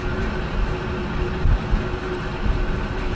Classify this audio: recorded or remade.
recorded